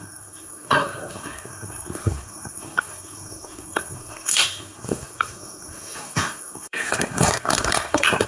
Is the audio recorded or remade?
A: remade